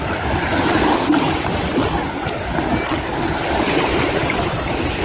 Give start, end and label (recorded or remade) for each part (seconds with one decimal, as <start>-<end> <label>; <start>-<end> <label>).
0.0-0.5 remade; 0.5-3.5 recorded; 3.5-5.0 remade